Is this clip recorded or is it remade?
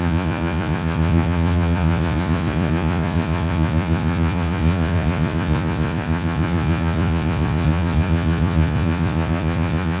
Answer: remade